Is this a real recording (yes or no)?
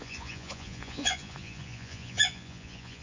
no